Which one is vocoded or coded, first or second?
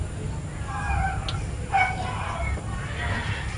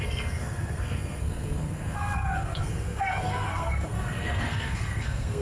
second